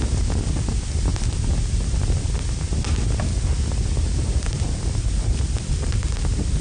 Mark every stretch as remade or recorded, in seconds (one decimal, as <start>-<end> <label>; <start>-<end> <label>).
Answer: 0.0-6.6 recorded